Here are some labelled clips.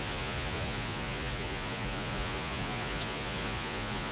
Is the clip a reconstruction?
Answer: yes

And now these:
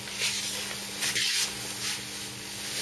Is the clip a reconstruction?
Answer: no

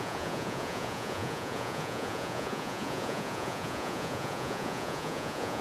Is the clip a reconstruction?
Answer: yes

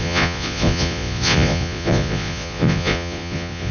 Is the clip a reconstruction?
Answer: yes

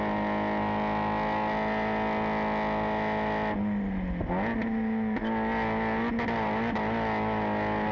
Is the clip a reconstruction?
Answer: no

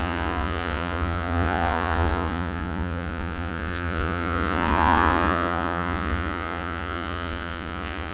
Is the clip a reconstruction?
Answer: yes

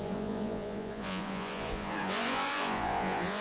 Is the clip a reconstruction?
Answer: yes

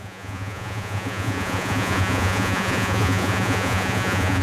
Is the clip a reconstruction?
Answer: yes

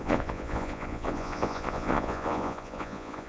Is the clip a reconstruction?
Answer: yes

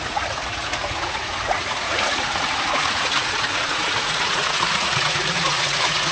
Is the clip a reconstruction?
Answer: yes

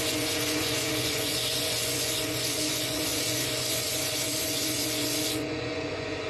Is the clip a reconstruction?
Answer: yes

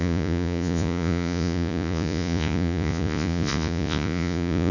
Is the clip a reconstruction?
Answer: yes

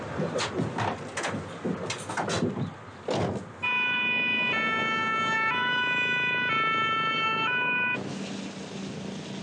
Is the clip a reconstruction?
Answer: no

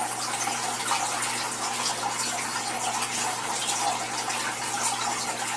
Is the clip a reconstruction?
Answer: no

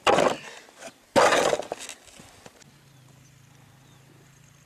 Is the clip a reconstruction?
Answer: no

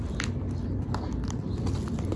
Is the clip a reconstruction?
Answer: no